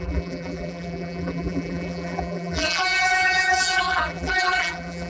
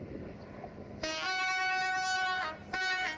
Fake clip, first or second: first